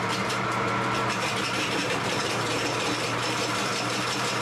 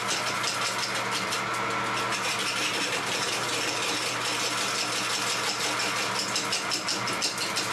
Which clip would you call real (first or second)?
second